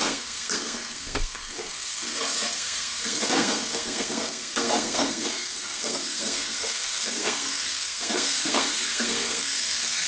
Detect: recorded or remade remade